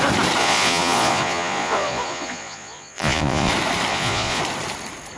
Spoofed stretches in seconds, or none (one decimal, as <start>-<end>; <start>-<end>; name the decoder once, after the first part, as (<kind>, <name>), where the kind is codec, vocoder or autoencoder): 0.4-3.5 (vocoder, Vocos); 3.9-4.4